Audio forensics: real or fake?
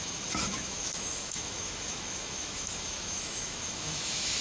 fake